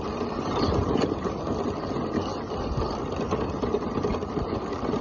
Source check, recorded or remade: recorded